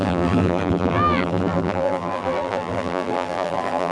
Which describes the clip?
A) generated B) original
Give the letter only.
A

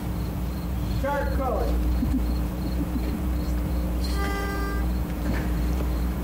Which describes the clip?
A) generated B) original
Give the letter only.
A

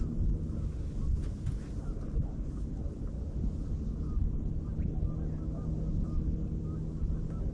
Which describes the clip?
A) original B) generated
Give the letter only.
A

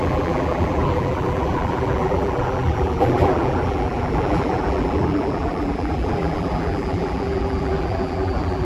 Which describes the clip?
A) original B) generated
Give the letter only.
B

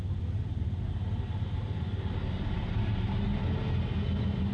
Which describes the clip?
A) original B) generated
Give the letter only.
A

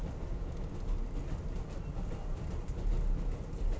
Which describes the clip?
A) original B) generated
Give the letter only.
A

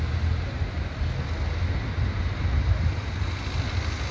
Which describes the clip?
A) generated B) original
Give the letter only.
B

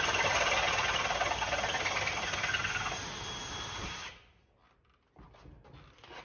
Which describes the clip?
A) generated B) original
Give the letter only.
B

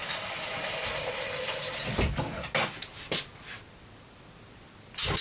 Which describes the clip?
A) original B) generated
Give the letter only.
A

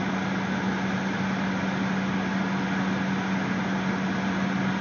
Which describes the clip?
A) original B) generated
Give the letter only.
A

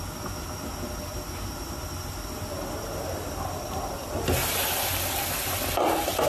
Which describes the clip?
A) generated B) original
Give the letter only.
B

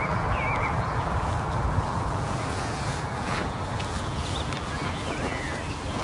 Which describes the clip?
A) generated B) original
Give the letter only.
A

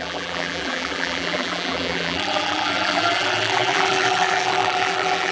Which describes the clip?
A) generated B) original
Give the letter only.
A